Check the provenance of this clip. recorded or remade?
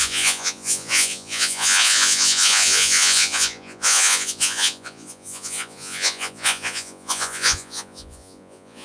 remade